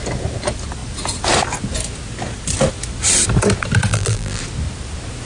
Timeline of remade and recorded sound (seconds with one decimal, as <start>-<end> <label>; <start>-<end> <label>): 0.0-3.9 recorded; 3.9-4.4 remade; 4.4-5.3 recorded